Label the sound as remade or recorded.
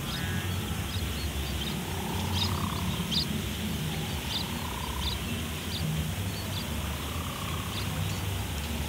recorded